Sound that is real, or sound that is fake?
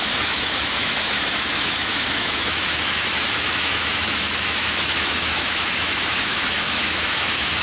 fake